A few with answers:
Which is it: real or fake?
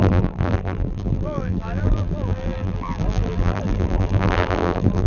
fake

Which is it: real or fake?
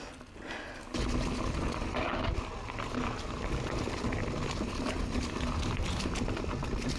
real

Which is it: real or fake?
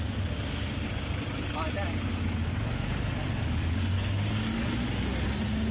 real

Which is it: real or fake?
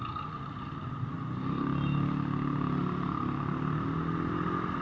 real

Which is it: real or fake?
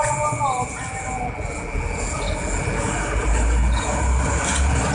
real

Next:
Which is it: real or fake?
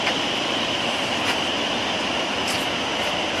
real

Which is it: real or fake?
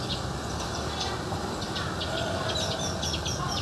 real